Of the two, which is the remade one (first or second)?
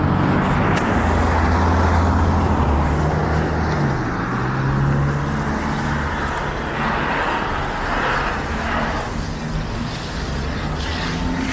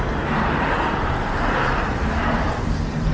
second